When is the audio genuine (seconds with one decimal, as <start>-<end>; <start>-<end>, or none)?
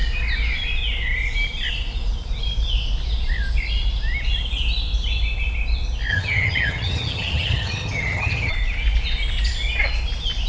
0.0-6.1; 8.5-10.5